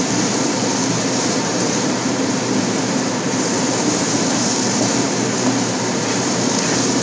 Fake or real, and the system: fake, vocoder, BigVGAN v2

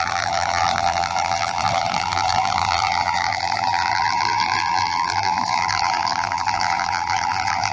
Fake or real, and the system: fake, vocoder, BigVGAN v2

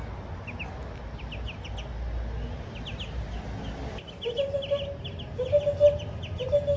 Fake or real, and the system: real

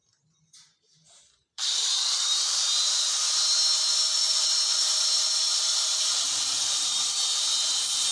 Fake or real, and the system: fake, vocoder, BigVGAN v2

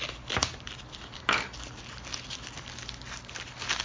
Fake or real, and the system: real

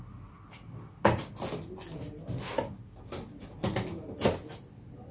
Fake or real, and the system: real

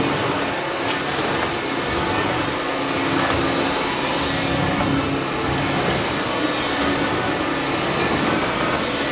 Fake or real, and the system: real